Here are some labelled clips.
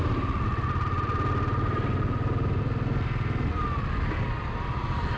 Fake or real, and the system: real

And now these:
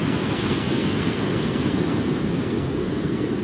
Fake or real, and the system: fake, codec, SNAC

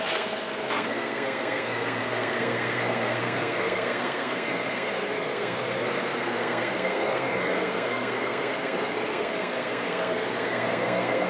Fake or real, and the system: fake, codec, SNAC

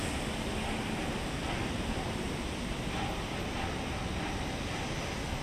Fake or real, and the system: real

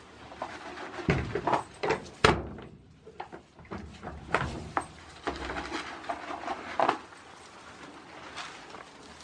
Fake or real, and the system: real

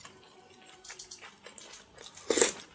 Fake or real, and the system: real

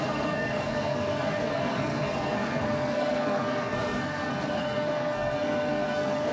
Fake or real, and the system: fake, codec, SNAC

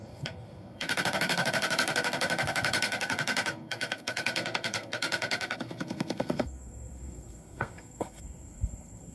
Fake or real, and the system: fake, codec, SNAC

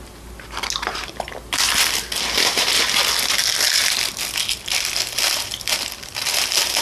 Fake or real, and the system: real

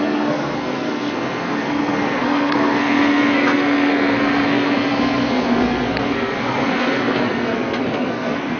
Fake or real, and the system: fake, codec, SNAC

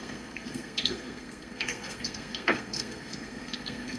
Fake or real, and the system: fake, codec, SNAC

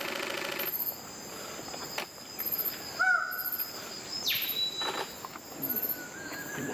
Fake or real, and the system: real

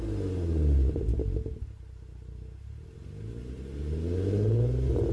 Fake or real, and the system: real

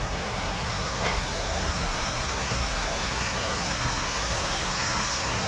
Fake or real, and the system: fake, codec, SNAC